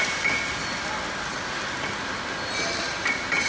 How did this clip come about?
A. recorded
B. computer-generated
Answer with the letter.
A